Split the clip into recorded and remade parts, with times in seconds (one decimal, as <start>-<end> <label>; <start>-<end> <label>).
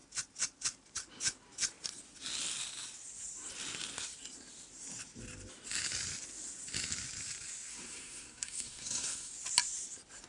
0.0-7.7 recorded; 7.7-9.3 remade; 9.3-10.3 recorded